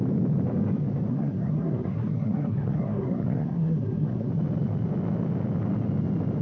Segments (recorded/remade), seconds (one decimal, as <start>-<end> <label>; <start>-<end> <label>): 0.0-1.1 recorded; 1.1-4.3 remade; 4.3-6.4 recorded